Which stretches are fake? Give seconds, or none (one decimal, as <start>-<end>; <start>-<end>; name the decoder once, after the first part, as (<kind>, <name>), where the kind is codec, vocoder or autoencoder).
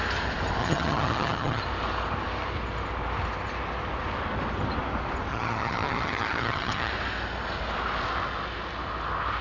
0.6-1.6 (vocoder, HiFi-GAN); 5.3-6.9